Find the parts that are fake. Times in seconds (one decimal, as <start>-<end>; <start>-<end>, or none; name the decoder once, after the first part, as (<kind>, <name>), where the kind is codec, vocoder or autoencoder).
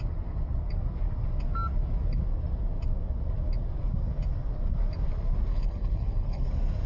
5.5-6.5 (codec, HILCodec)